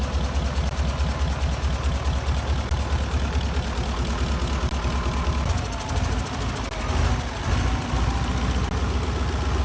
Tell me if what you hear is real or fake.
real